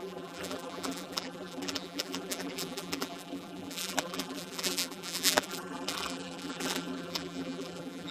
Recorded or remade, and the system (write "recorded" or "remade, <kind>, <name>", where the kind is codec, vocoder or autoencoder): remade, vocoder, BigVGAN v2